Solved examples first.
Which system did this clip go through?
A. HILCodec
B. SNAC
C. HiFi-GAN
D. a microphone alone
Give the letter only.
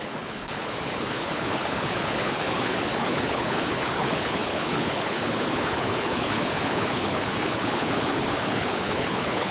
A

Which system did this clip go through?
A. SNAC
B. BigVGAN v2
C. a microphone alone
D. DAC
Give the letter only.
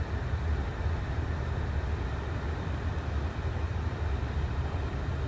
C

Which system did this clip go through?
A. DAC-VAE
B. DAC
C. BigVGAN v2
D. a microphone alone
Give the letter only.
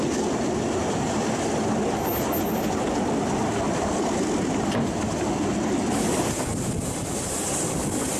D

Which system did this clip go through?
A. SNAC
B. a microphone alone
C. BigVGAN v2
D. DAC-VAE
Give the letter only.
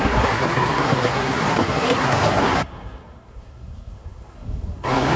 A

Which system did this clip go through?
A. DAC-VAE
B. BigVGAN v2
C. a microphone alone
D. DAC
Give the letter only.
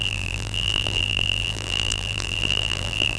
B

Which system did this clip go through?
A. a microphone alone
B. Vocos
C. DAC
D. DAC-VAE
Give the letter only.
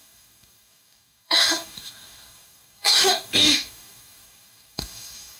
C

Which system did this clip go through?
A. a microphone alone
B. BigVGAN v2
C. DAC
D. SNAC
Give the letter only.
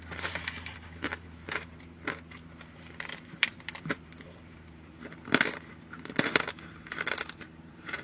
B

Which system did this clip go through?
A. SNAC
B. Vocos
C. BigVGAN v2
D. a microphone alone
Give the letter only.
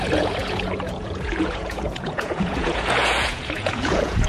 B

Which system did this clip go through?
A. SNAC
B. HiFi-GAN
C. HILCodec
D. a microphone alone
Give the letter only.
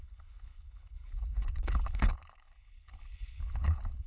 C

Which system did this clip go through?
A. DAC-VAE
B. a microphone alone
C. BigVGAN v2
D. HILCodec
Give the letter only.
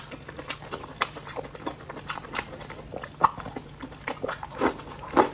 B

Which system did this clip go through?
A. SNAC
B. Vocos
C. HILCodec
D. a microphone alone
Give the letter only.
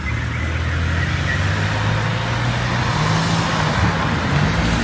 D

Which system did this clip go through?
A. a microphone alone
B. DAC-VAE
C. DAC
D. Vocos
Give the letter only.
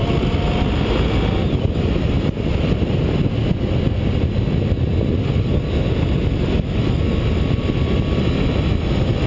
A